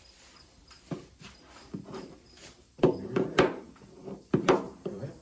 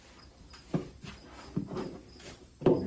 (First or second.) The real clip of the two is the second